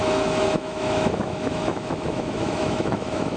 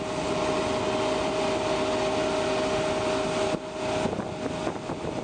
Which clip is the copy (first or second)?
first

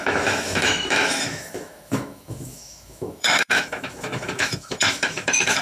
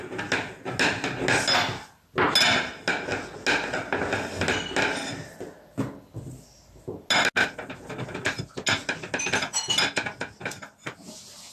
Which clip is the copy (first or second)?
first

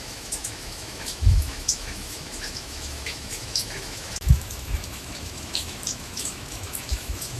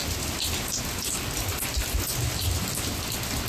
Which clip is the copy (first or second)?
first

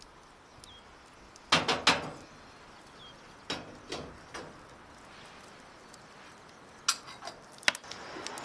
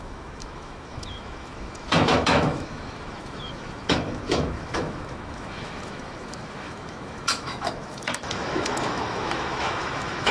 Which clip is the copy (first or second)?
second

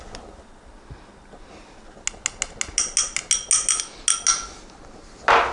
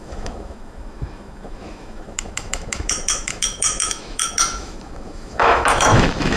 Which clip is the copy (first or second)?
second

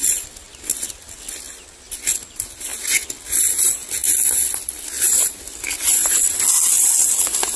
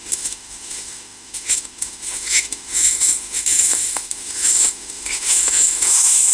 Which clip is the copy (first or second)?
second